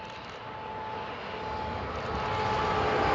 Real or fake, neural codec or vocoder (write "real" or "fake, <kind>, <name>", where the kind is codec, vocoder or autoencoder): real